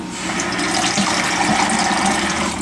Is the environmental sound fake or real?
real